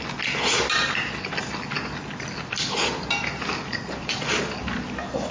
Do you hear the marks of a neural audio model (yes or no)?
no